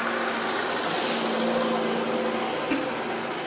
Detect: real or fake real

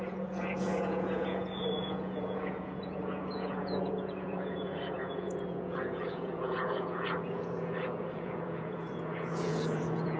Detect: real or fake fake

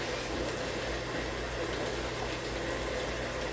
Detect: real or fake real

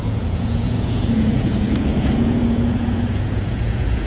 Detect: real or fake fake